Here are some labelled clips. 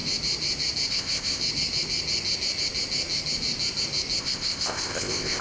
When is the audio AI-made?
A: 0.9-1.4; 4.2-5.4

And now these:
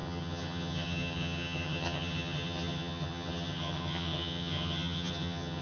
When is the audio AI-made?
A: 0.0-5.6

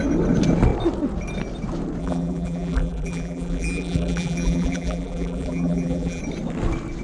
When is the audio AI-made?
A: 2.0-6.2